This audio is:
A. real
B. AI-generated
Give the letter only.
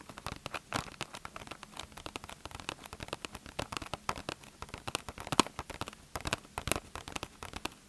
A